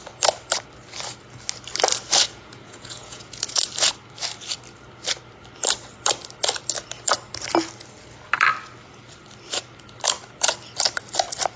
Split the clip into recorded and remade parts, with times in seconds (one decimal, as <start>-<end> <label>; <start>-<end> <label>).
0.0-2.3 recorded; 2.3-3.6 remade; 3.6-11.6 recorded